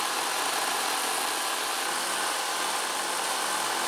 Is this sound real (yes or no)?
yes